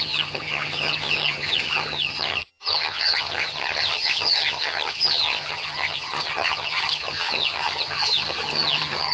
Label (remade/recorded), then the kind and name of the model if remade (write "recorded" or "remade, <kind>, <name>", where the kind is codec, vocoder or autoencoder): remade, vocoder, HiFi-GAN